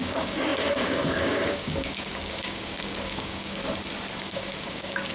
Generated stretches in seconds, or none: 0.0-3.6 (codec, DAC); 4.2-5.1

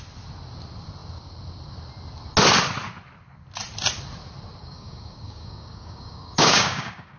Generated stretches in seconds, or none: 4.6-7.2 (codec, DAC)